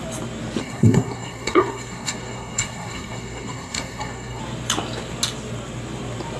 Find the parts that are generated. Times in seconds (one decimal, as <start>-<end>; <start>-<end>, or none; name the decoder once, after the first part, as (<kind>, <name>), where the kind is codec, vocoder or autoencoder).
0.6-4.4 (codec, SNAC)